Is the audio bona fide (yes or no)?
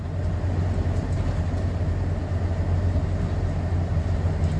yes